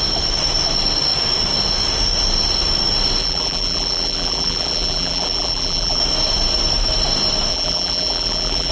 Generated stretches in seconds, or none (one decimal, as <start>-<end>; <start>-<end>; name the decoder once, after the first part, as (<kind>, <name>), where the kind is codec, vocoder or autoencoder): 3.2-6.0 (vocoder, BigVGAN v2); 7.5-8.7